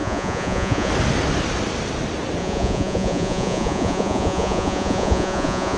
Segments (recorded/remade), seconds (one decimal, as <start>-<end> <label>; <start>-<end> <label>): 0.0-0.9 remade; 0.9-2.4 recorded; 2.4-5.8 remade